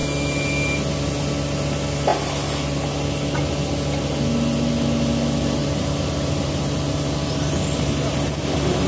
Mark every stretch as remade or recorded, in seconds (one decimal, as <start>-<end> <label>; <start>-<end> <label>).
0.0-5.6 recorded; 5.6-7.5 remade; 7.5-8.9 recorded

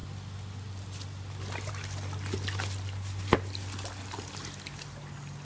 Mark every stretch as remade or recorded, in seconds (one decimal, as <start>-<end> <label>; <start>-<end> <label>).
0.0-5.4 recorded

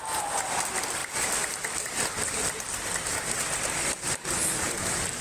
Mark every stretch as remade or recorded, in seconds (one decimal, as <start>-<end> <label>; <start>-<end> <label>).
0.0-5.2 recorded

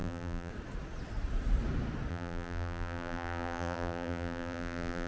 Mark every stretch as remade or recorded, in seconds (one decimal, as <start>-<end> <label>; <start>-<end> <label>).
0.0-0.5 remade; 0.5-2.1 recorded; 2.1-5.1 remade

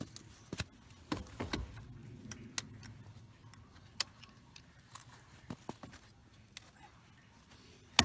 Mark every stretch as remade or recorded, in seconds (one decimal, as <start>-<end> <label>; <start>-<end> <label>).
0.0-3.7 recorded; 3.7-5.6 remade; 5.6-8.0 recorded

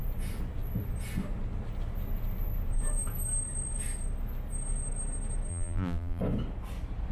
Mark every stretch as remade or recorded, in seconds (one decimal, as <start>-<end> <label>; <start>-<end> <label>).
0.0-5.5 recorded; 5.5-6.2 remade; 6.2-7.1 recorded